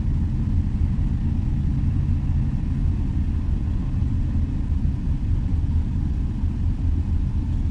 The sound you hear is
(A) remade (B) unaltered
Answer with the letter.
B